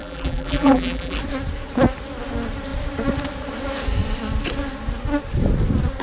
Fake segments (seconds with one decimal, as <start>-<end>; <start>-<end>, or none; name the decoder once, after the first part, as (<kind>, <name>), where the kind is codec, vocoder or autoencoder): 0.0-1.2 (vocoder, BigVGAN v2)